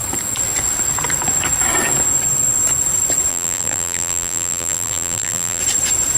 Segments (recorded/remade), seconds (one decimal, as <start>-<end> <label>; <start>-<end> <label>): 0.0-3.3 recorded; 3.3-5.6 remade; 5.6-6.2 recorded